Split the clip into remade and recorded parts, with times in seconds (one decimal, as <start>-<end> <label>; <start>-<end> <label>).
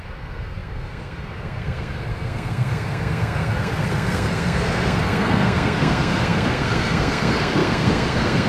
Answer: 0.0-8.5 remade